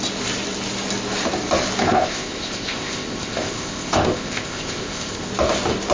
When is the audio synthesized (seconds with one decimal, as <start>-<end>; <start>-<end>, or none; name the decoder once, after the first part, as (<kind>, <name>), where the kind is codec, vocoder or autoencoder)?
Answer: 1.8-5.3 (codec, ZipCodec)